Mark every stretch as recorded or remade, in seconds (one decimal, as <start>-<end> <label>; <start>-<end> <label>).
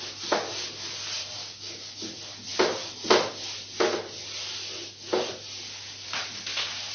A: 0.0-1.4 recorded; 1.4-2.0 remade; 2.0-6.9 recorded